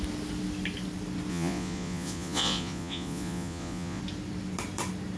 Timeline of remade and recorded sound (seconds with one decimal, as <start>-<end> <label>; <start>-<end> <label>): 0.0-1.3 recorded; 1.3-4.0 remade; 4.0-5.2 recorded